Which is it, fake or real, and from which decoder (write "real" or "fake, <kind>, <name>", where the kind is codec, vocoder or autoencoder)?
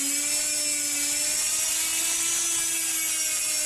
real